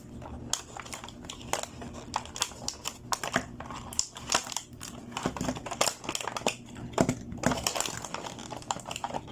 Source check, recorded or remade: recorded